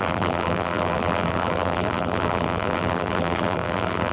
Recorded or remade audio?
remade